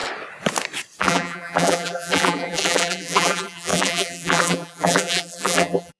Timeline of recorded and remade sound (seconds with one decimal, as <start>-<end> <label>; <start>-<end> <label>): 0.0-1.0 recorded; 1.0-6.0 remade